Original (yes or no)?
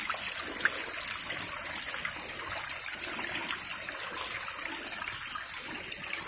no